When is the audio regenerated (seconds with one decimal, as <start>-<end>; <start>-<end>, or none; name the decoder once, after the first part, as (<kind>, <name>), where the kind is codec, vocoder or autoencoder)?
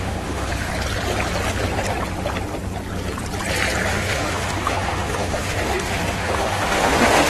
0.0-0.7 (autoencoder, DAC-VAE); 3.9-7.3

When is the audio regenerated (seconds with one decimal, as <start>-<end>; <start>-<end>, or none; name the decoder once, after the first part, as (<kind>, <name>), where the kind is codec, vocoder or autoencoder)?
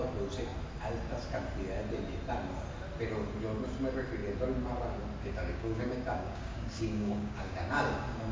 5.4-7.8 (codec, DAC)